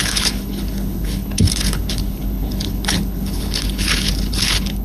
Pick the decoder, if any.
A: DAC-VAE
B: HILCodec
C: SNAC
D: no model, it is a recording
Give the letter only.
B